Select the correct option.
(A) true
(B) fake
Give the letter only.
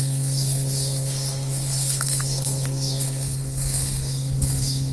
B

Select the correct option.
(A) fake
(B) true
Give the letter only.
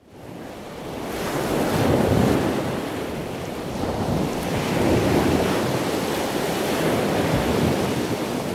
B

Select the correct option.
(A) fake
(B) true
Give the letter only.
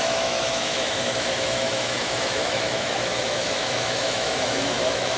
A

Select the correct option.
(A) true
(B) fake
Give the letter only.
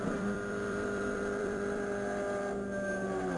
B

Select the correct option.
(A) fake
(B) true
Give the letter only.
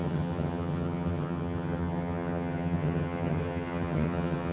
A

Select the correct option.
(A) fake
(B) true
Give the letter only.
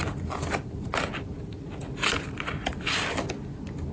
B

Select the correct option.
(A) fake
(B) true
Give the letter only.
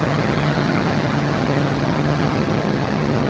A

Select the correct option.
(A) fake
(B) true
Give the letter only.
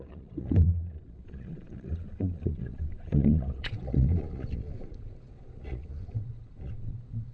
A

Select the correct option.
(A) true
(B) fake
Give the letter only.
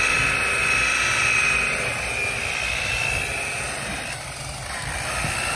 A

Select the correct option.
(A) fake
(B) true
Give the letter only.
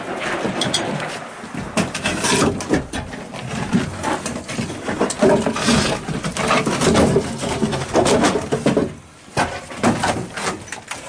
B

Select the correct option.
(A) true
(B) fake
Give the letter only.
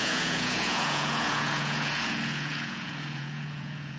B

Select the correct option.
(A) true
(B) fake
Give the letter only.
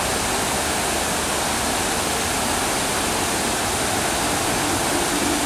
A